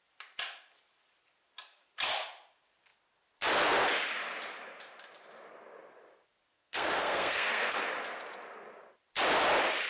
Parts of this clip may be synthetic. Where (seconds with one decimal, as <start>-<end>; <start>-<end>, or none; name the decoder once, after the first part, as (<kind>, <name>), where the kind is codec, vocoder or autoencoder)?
6.5-7.7 (codec, SNAC)